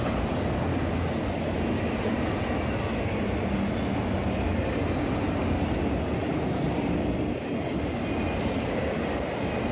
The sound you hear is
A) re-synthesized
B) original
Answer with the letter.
B